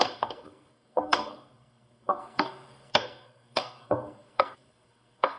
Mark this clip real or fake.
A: fake